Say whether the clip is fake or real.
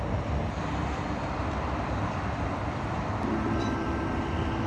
fake